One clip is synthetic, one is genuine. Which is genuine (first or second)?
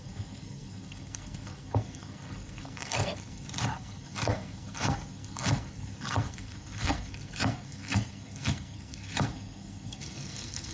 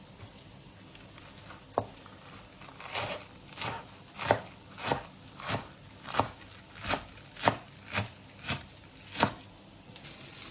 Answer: second